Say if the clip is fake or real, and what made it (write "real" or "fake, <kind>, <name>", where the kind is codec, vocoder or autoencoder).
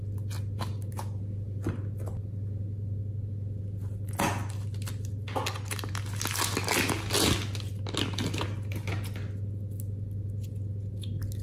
real